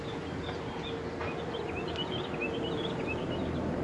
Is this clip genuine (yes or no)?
yes